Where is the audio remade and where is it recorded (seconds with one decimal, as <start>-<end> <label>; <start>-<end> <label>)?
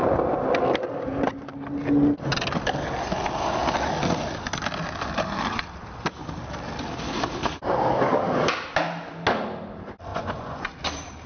0.0-10.1 recorded; 10.1-10.7 remade; 10.7-11.3 recorded